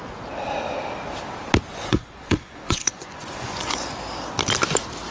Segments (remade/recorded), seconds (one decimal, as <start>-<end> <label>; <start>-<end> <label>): 0.0-1.7 recorded; 1.7-3.9 remade; 3.9-5.1 recorded